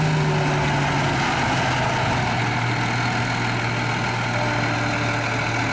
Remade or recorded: recorded